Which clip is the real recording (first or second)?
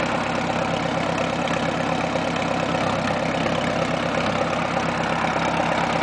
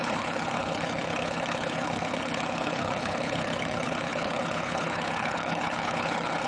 first